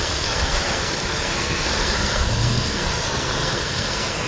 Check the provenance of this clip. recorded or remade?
remade